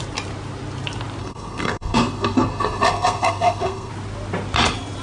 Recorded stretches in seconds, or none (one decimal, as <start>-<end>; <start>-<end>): 0.0-1.2; 3.9-5.0

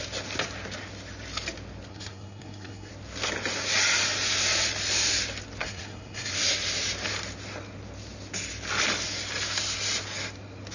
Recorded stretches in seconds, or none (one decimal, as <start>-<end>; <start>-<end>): 0.0-1.9; 2.9-5.6; 6.3-10.7

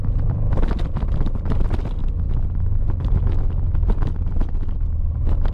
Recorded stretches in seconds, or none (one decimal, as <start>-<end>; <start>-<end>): 0.0-5.5

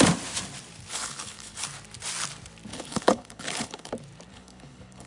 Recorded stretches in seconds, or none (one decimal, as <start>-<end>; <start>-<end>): 0.0-0.9; 1.6-2.7; 3.9-4.3